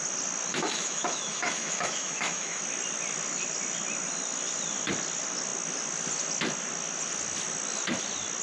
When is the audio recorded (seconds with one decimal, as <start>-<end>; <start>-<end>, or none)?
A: 0.0-0.5; 2.6-8.4